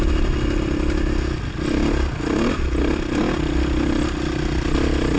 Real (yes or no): yes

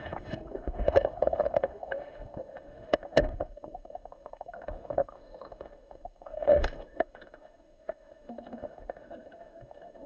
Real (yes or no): no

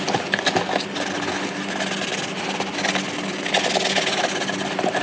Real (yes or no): yes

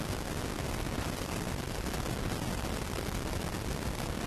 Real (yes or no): yes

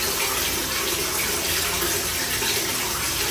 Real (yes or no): yes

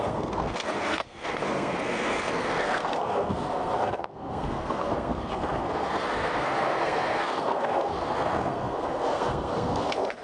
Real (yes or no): no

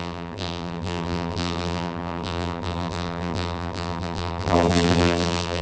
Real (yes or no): no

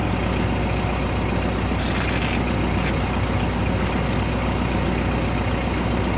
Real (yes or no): yes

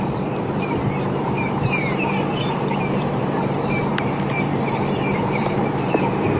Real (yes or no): no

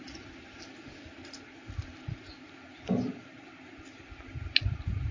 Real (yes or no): yes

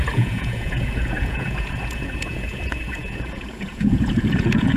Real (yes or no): no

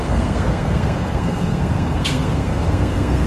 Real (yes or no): no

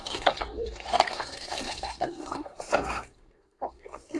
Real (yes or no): no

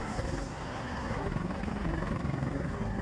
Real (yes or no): no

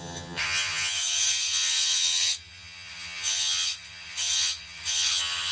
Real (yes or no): no